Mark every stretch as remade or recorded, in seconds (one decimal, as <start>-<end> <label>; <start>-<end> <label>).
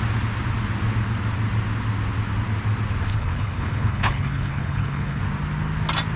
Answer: 0.0-3.1 recorded; 3.1-5.2 remade; 5.2-6.2 recorded